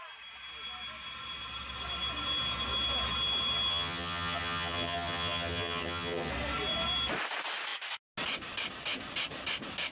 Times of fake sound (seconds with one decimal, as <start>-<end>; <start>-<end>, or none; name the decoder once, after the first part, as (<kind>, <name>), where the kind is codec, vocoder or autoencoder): 3.7-6.3 (vocoder, HiFi-GAN)